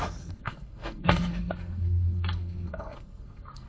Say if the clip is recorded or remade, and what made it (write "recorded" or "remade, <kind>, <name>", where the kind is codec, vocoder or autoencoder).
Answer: remade, codec, SNAC